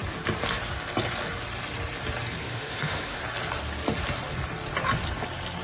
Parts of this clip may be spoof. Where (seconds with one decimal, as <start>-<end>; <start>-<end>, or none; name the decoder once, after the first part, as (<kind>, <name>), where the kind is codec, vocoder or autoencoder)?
2.4-3.2 (autoencoder, DAC-VAE)